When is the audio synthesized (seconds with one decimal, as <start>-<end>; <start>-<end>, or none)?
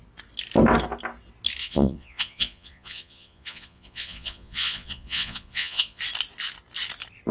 1.6-6.0